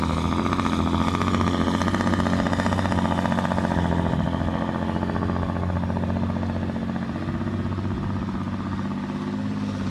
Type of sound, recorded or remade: recorded